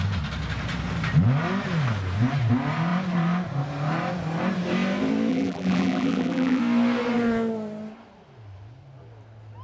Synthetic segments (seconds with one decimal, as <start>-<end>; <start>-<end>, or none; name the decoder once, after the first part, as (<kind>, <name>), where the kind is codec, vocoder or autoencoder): 5.3-6.6 (vocoder, BigVGAN v2)